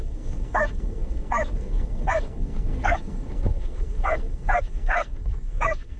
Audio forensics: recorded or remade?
remade